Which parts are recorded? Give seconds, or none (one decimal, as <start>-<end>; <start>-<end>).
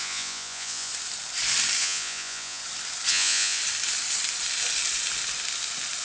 0.9-1.8; 2.6-3.1; 3.6-6.0